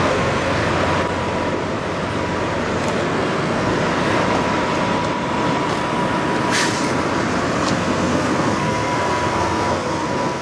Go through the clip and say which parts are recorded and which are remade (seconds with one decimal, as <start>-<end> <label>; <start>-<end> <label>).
0.0-0.6 remade; 0.6-3.0 recorded; 3.0-3.7 remade; 3.7-7.7 recorded; 7.7-10.4 remade